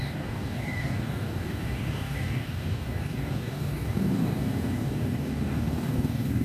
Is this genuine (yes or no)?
no